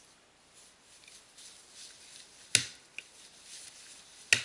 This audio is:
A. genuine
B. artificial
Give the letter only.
A